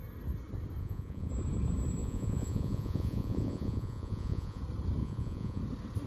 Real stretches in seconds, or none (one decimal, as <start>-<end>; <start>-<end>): 0.0-0.8; 1.3-2.0; 4.6-5.0; 5.6-6.1